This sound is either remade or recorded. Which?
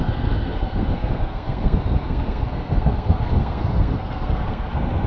remade